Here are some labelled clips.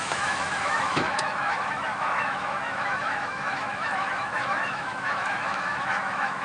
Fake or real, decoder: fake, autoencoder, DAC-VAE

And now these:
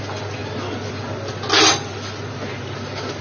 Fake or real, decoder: real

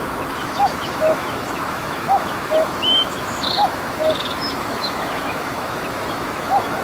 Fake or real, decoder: fake, autoencoder, DAC-VAE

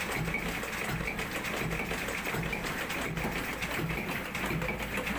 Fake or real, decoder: real